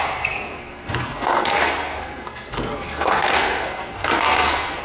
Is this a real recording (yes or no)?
no